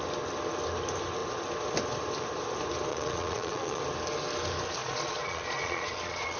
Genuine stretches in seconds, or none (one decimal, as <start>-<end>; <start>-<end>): 0.0-2.9; 3.8-4.8